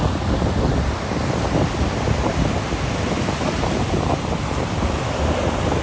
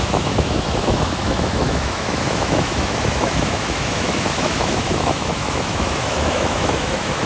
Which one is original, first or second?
first